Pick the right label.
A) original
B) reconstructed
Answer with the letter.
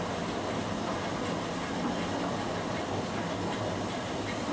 A